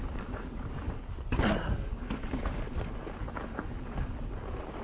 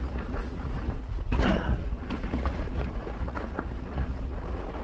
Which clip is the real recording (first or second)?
first